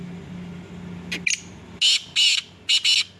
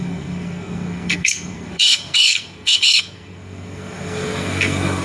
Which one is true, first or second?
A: first